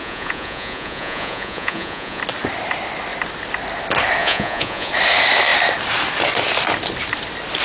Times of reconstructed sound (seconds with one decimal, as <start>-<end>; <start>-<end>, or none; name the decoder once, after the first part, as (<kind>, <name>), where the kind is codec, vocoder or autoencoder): 0.0-2.2 (vocoder, Vocos); 4.2-4.9